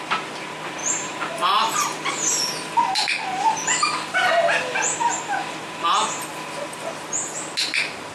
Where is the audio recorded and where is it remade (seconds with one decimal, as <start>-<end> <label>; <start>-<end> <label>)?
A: 0.0-0.8 recorded; 0.8-2.4 remade; 2.4-8.1 recorded